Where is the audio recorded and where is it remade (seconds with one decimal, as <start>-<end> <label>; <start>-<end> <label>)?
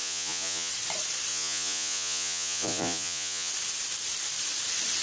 0.0-0.7 remade; 0.7-1.3 recorded; 1.3-3.5 remade; 3.5-5.0 recorded